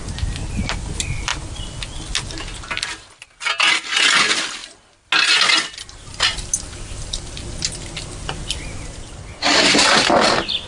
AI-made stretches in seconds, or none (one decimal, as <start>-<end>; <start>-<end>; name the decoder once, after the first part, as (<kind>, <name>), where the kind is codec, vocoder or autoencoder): none